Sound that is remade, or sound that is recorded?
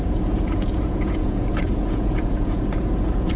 remade